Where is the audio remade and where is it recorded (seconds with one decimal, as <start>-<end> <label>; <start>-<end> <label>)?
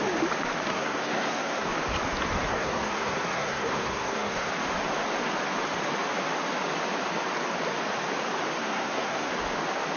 0.0-0.7 recorded; 0.7-1.7 remade; 1.7-2.5 recorded; 2.5-4.5 remade; 4.5-8.6 recorded; 8.6-9.3 remade; 9.3-10.0 recorded